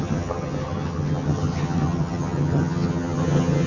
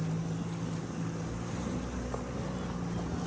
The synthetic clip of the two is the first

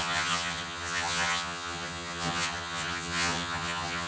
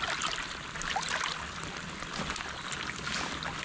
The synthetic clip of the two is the first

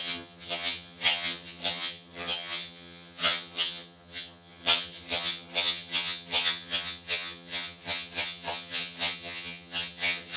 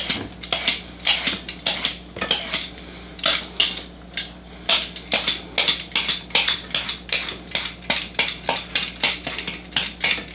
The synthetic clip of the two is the first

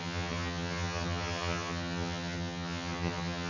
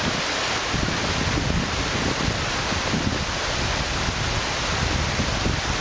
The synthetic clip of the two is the first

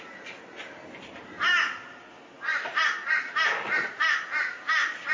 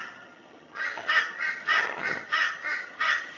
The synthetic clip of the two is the second